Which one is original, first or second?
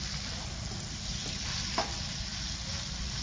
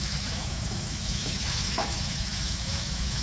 first